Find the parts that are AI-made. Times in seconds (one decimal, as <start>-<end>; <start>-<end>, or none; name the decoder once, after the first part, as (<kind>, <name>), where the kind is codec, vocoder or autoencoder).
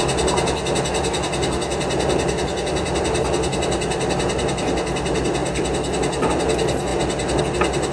none